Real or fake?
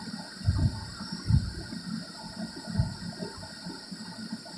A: fake